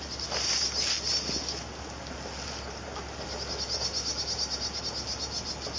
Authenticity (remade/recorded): recorded